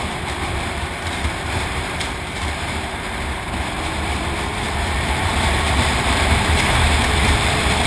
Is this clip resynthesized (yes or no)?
yes